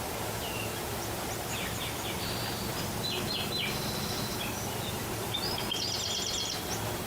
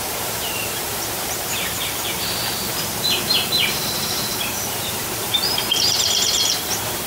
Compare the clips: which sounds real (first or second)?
first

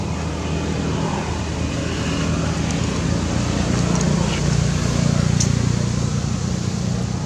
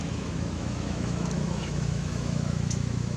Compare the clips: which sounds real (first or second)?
first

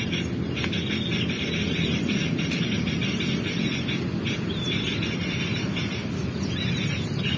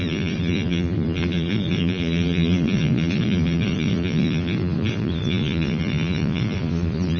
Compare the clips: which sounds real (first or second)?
first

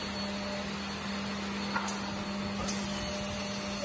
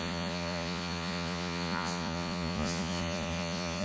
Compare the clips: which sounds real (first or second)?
first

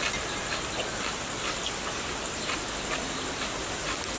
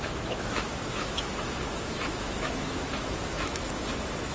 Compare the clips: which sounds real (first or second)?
first